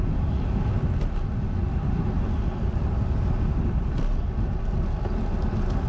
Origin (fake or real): real